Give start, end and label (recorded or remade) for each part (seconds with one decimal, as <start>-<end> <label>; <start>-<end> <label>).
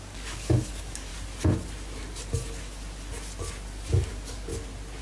0.0-1.1 remade; 1.1-4.1 recorded; 4.1-4.5 remade; 4.5-5.0 recorded